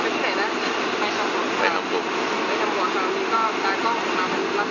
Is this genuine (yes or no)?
yes